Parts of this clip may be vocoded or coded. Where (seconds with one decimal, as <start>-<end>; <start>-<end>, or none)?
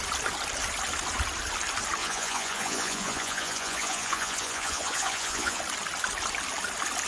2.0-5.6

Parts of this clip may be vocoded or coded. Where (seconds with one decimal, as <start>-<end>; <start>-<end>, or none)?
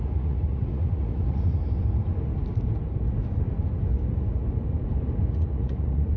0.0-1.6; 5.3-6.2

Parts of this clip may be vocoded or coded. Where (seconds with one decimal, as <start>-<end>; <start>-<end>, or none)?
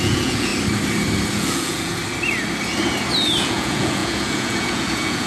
0.0-0.5; 1.3-2.0; 3.4-5.3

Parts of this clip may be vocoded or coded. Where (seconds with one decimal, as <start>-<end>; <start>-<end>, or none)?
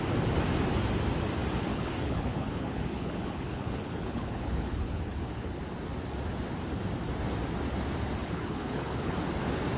1.7-5.6; 8.2-9.1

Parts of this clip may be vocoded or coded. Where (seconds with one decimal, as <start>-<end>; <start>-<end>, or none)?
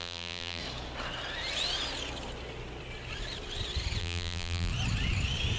0.0-0.6; 4.0-4.7